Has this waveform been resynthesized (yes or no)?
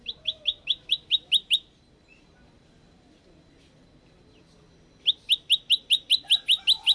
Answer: yes